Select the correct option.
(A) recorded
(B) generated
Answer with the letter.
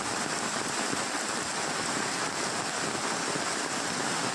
A